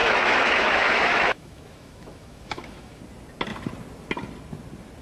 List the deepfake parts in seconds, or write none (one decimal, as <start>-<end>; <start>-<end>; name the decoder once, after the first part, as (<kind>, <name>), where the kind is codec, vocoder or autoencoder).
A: 0.0-3.0 (autoencoder, DAC-VAE)